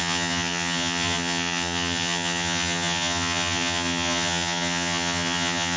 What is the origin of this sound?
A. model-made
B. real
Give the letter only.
A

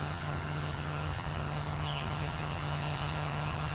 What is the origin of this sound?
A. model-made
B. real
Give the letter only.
A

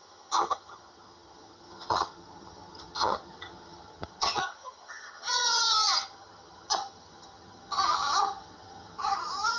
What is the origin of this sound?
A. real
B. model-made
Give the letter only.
B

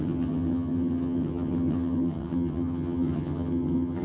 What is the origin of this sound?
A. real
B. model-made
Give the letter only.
B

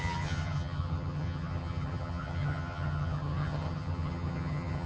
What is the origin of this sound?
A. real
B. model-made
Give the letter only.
B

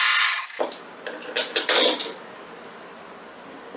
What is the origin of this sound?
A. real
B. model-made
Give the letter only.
A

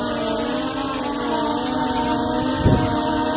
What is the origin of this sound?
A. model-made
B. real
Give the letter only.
B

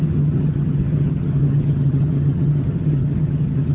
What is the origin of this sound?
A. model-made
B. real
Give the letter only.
A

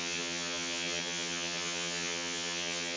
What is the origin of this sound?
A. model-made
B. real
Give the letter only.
A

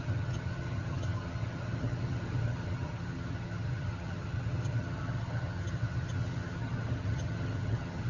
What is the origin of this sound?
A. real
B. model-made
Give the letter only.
B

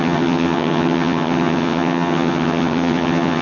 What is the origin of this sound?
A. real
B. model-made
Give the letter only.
B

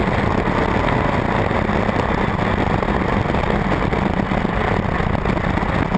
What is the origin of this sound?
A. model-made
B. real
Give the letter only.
B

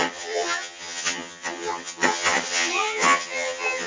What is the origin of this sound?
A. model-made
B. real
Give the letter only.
A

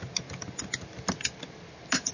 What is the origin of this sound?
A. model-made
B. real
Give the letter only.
B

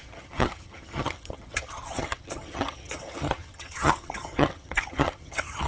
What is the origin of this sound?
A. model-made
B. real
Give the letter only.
A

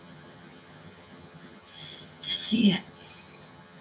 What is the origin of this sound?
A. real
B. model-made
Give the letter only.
B